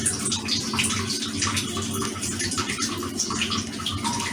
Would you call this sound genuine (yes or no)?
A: yes